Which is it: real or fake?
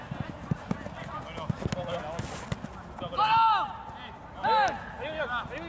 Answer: real